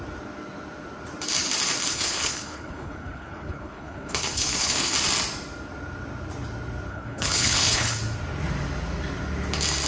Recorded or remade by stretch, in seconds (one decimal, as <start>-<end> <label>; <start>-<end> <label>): 0.0-1.9 recorded; 1.9-4.9 remade; 4.9-6.9 recorded; 6.9-8.0 remade; 8.0-9.9 recorded